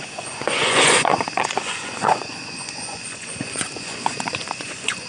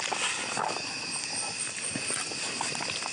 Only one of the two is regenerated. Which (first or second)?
first